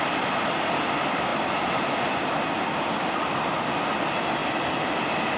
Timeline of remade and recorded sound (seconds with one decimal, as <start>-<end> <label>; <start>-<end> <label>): 0.0-5.4 recorded